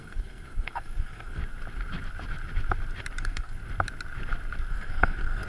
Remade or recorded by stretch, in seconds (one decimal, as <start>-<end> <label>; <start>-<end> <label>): 0.0-1.4 remade; 1.4-3.2 recorded; 3.2-3.6 remade; 3.6-4.7 recorded; 4.7-5.5 remade